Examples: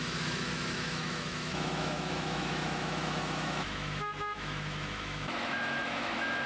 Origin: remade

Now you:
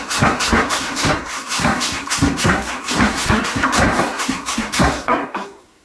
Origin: remade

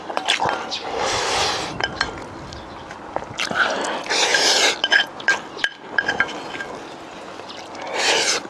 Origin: recorded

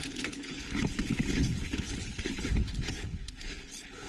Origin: remade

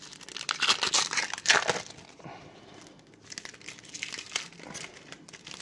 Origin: recorded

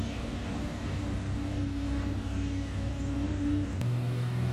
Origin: remade